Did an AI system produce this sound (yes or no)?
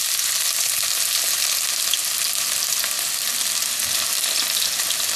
no